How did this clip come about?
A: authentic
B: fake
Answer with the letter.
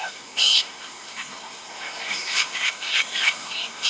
B